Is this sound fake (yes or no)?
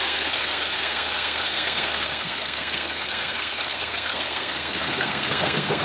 yes